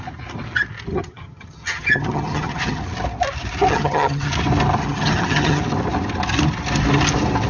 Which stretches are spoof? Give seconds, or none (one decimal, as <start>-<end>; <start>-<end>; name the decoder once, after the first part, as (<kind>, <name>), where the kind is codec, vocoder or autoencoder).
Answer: 0.9-2.8 (vocoder, HiFi-GAN); 3.7-4.3; 4.8-5.6